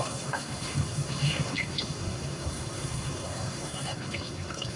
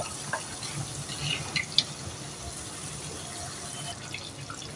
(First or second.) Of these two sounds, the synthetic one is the first